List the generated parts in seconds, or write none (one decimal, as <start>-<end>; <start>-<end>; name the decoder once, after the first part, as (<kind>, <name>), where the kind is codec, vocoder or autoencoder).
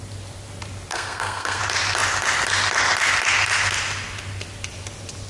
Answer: 0.9-1.6 (codec, SNAC)